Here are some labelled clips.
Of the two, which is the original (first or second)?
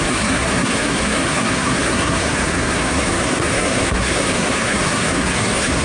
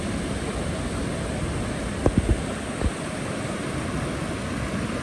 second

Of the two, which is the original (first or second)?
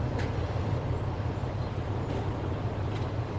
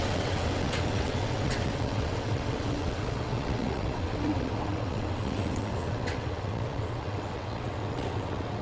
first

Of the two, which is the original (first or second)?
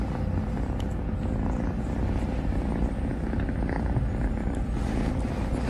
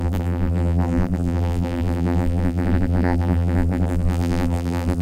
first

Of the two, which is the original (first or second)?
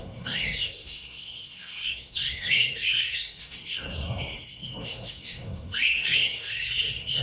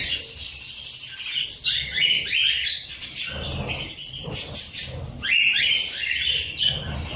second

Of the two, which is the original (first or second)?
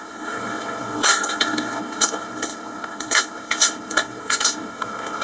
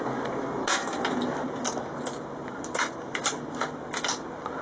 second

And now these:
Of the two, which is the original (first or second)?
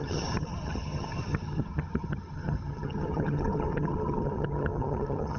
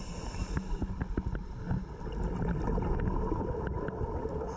second